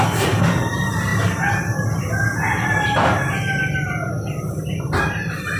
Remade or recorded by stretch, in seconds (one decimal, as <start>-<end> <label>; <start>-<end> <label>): 0.0-5.6 recorded

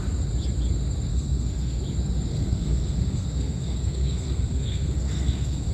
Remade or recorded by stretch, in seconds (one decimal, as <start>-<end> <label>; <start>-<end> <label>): 0.0-1.1 recorded; 1.1-1.8 remade; 1.8-2.3 recorded; 2.3-5.7 remade